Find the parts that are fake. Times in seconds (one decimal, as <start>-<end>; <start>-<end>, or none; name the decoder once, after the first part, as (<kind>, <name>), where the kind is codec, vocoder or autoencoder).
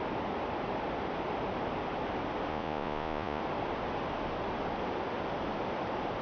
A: 2.5-3.4 (vocoder, Vocos)